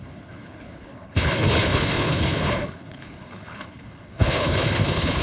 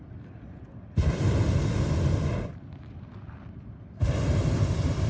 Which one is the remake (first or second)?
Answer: first